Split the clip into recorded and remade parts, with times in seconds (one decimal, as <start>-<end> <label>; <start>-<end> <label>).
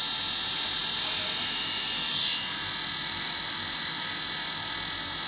0.0-5.3 recorded